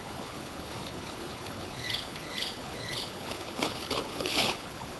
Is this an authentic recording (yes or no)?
no